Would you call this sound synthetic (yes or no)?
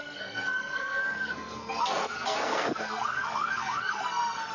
yes